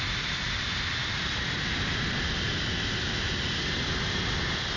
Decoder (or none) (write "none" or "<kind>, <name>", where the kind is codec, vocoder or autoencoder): none